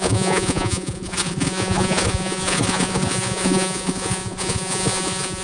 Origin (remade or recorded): remade